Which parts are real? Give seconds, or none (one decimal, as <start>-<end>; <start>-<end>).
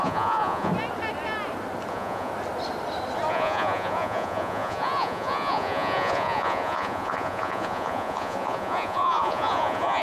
0.7-1.9; 2.3-3.3